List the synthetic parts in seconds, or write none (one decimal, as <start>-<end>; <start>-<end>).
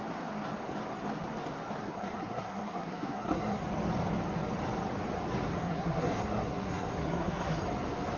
1.8-3.6; 5.6-7.6